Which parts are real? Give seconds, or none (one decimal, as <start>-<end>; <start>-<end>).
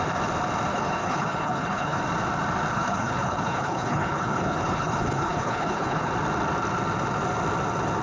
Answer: 0.0-0.7; 2.0-2.7; 6.1-8.0